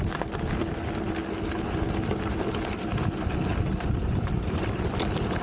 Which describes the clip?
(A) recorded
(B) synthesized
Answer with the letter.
A